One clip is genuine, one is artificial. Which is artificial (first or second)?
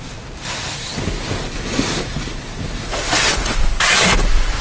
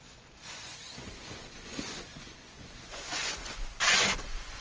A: second